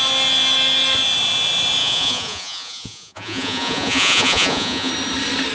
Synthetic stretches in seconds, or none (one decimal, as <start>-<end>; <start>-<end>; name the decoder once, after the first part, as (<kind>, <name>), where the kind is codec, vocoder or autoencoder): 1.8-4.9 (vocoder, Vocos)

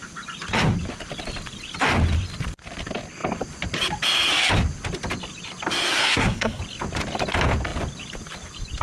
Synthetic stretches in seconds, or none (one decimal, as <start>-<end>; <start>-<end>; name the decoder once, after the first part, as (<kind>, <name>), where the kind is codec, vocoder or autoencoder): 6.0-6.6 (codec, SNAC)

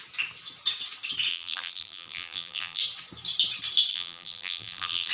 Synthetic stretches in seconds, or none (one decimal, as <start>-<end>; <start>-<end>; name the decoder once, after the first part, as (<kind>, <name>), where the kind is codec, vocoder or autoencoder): 1.3-2.8 (vocoder, BigVGAN v2); 3.9-5.1

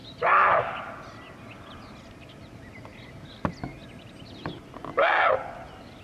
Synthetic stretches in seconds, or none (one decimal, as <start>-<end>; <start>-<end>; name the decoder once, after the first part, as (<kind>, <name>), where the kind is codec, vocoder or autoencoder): none

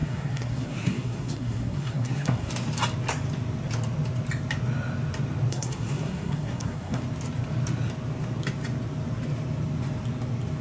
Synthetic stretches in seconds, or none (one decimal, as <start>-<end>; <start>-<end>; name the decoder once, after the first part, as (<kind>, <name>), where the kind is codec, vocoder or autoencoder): 0.0-2.5 (codec, SNAC); 5.5-7.0

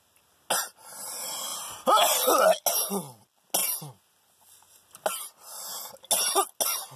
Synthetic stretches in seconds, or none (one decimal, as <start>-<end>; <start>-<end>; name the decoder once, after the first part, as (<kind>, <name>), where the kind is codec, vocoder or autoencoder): none

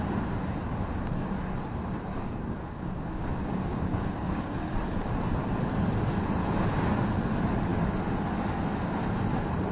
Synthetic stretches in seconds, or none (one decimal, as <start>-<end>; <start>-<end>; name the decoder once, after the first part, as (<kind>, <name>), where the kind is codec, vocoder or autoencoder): 2.1-4.4 (codec, DAC)